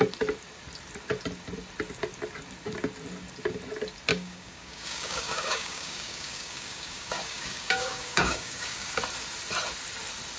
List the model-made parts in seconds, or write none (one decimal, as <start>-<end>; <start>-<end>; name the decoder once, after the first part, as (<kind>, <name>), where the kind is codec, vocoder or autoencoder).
4.1-9.0 (codec, DAC)